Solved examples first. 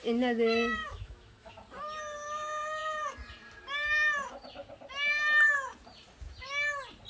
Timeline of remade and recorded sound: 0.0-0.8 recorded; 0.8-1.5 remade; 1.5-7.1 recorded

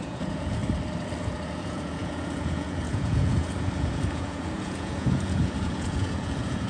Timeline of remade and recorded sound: 0.0-0.6 remade; 0.6-1.2 recorded; 1.2-6.7 remade

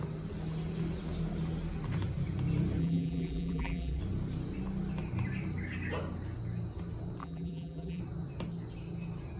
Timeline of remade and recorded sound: 0.0-2.8 recorded; 2.8-4.0 remade; 4.0-7.2 recorded; 7.2-8.0 remade; 8.0-9.4 recorded

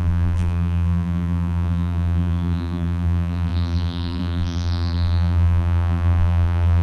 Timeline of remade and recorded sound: 0.0-6.8 remade

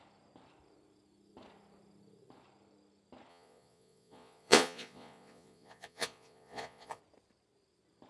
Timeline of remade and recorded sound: 0.0-3.3 recorded; 3.3-7.0 remade; 7.0-8.1 recorded

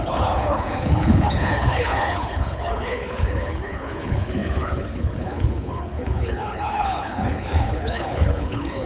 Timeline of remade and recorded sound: 0.0-8.9 remade

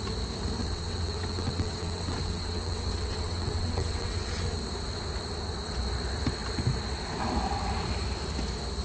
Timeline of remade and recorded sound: 0.0-0.6 recorded; 0.6-4.6 remade; 4.6-8.8 recorded

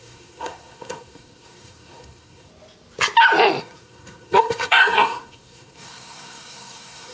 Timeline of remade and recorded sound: 0.0-2.5 remade; 2.5-3.6 recorded; 3.6-7.1 remade